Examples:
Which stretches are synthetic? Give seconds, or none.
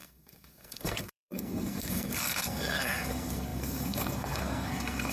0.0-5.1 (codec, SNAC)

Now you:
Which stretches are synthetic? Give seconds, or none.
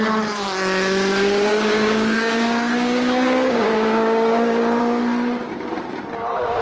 1.5-4.8 (codec, DAC)